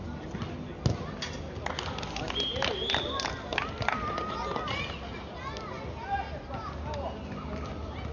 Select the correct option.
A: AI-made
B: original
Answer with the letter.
B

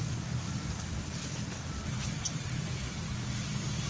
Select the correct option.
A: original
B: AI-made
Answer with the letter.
A